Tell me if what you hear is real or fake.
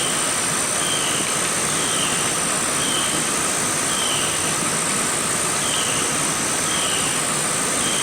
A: real